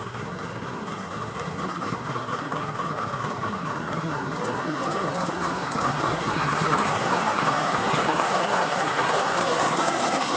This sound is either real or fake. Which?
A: fake